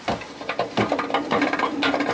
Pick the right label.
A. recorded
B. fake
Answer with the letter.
A